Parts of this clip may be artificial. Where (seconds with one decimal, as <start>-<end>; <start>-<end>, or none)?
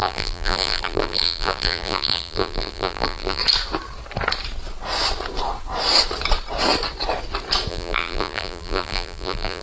0.0-3.4; 7.7-9.6